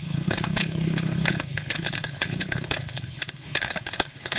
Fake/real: fake